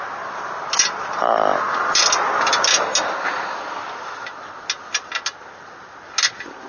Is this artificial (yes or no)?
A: no